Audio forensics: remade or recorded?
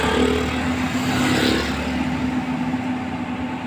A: recorded